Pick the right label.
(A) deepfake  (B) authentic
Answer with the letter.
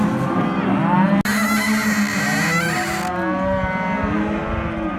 B